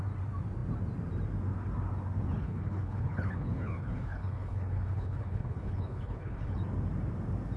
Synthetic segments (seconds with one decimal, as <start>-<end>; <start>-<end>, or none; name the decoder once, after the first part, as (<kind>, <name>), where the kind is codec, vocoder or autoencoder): 2.3-6.6 (codec, HILCodec)